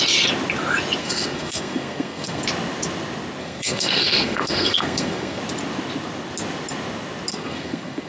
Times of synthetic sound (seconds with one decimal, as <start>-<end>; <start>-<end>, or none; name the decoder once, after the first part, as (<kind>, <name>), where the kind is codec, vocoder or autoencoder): 1.0-2.4 (codec, SNAC); 3.4-5.4; 7.3-8.1